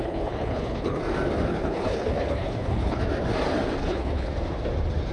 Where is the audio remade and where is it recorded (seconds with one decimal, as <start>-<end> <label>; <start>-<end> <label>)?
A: 0.0-1.0 remade; 1.0-1.5 recorded; 1.5-3.0 remade; 3.0-3.8 recorded; 3.8-4.3 remade; 4.3-5.1 recorded